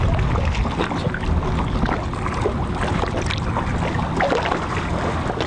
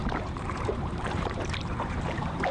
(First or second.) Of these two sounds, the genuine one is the first